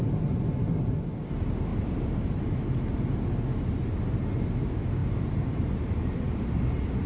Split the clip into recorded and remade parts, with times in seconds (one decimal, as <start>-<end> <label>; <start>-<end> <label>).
0.0-1.7 recorded; 1.7-2.6 remade; 2.6-5.0 recorded; 5.0-6.6 remade; 6.6-7.1 recorded